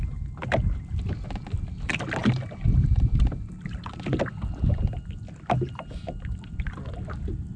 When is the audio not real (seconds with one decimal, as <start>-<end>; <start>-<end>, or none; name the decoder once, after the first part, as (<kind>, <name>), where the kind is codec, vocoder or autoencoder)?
none